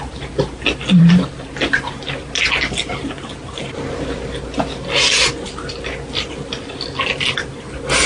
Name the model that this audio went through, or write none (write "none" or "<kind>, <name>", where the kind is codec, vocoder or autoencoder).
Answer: none